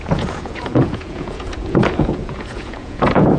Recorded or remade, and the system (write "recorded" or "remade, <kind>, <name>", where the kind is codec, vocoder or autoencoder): remade, vocoder, Vocos